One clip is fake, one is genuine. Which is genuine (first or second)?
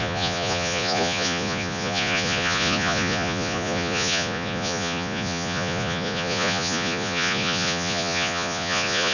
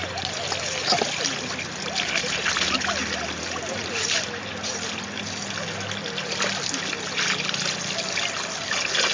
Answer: second